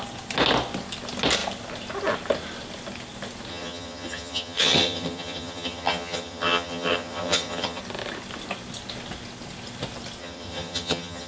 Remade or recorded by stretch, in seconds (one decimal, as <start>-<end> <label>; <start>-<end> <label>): 0.0-3.5 recorded; 3.5-7.8 remade; 7.8-10.2 recorded; 10.2-11.3 remade

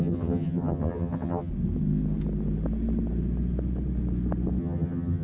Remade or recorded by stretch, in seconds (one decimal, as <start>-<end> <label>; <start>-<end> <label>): 0.0-1.5 remade; 1.5-4.6 recorded; 4.6-5.2 remade